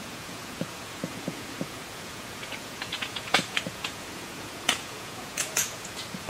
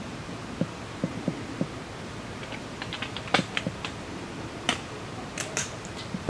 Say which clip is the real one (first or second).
second